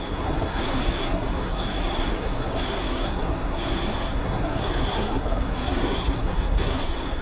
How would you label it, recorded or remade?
remade